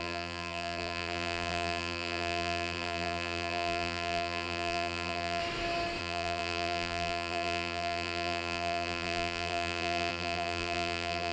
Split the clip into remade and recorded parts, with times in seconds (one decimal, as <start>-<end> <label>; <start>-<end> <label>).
0.0-5.4 remade; 5.4-6.0 recorded; 6.0-11.3 remade

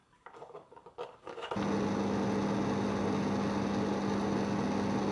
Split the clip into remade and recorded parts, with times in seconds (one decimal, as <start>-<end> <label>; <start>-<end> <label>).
0.0-1.5 remade; 1.5-5.1 recorded

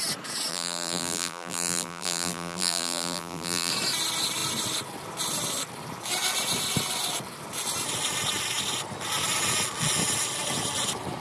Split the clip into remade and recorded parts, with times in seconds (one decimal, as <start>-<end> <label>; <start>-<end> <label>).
0.0-0.5 recorded; 0.5-3.7 remade; 3.7-11.2 recorded

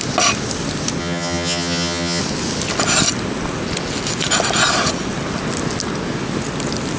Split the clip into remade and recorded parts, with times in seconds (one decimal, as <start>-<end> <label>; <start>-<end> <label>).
0.0-1.0 recorded; 1.0-2.2 remade; 2.2-7.0 recorded

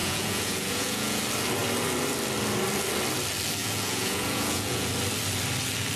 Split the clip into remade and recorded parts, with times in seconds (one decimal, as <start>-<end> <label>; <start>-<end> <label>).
0.0-1.2 remade; 1.2-3.6 recorded; 3.6-4.9 remade; 4.9-6.0 recorded

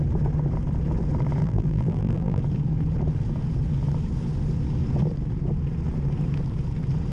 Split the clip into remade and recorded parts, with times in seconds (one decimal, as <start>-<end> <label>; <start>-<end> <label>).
0.0-1.4 recorded; 1.4-2.4 remade; 2.4-7.1 recorded

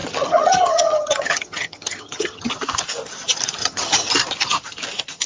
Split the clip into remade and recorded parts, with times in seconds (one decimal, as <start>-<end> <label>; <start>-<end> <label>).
0.0-2.5 remade; 2.5-3.6 recorded; 3.6-4.1 remade; 4.1-5.3 recorded

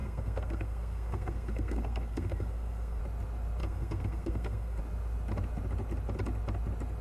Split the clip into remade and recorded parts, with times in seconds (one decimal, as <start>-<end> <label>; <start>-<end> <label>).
0.0-3.0 remade; 3.0-3.6 recorded; 3.6-4.8 remade; 4.8-7.0 recorded